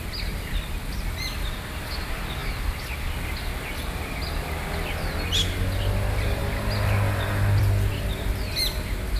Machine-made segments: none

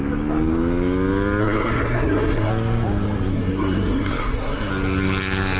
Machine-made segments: 1.4-2.5; 3.3-4.7

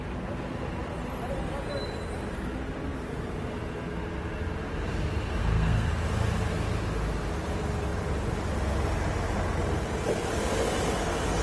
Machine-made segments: 5.4-5.9